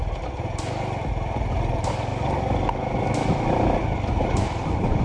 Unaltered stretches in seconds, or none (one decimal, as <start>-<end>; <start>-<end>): 0.0-5.0